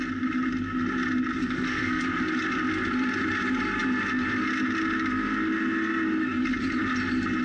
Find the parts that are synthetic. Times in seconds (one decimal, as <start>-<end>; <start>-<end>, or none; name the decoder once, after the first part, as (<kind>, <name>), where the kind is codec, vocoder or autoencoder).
1.4-2.0 (codec, SNAC)